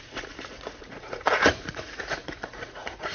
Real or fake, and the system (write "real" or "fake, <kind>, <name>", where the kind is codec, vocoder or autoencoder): fake, vocoder, Vocos